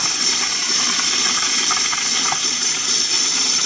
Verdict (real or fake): fake